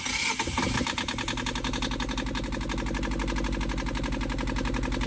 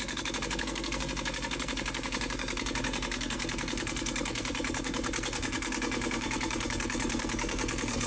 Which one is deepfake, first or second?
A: second